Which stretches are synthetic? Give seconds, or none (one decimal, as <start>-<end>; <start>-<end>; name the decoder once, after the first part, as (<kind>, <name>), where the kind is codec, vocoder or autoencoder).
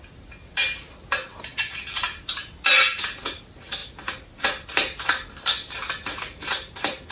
none